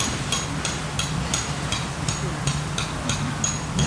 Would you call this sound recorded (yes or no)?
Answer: yes